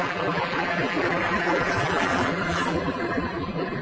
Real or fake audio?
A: fake